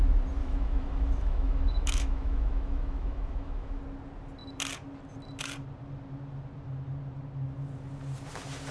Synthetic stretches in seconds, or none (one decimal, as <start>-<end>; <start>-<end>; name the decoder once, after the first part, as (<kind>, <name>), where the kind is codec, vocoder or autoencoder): 0.4-3.8 (autoencoder, DAC-VAE)